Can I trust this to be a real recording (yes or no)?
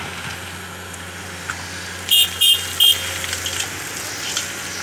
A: yes